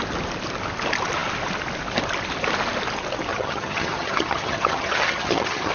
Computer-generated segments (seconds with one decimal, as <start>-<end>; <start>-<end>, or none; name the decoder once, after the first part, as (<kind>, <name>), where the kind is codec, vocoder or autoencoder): 3.3-5.7 (vocoder, HiFi-GAN)